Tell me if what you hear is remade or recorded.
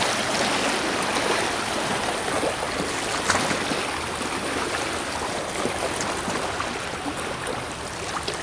recorded